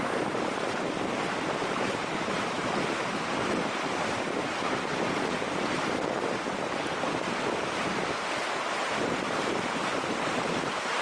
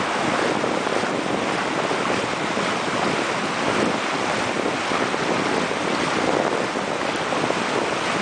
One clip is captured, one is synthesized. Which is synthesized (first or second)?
first